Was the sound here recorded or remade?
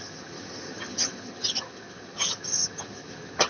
remade